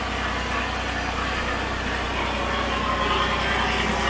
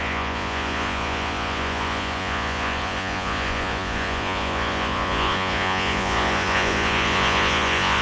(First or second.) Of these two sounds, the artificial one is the second